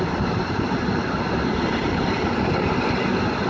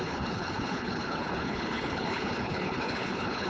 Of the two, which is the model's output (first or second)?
second